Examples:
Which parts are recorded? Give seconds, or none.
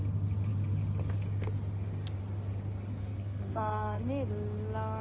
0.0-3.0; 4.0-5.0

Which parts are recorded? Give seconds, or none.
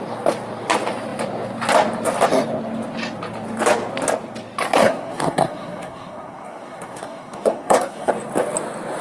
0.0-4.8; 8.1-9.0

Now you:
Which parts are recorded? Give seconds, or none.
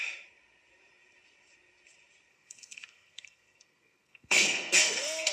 0.0-2.3